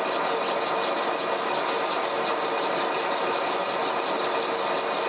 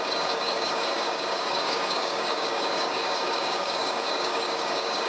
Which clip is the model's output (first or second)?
second